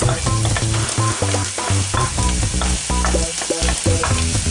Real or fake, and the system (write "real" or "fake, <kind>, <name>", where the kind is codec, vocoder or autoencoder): real